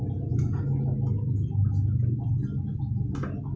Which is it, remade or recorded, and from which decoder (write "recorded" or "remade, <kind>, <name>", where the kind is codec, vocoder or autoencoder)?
recorded